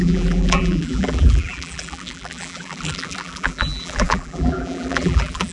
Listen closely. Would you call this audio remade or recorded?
remade